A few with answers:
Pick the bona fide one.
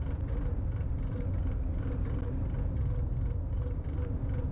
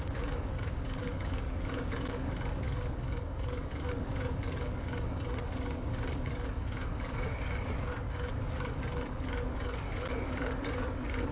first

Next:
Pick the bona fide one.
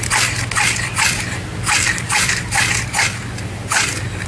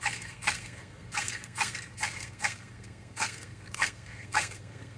first